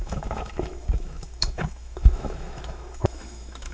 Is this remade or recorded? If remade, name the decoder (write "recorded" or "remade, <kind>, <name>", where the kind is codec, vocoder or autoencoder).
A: remade, autoencoder, DAC-VAE